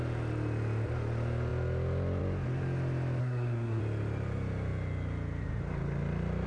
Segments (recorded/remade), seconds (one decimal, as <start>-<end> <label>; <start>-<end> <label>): 0.0-3.2 recorded; 3.2-3.8 remade; 3.8-6.5 recorded